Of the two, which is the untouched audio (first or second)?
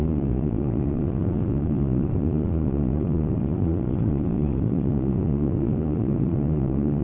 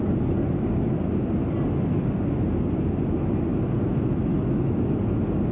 second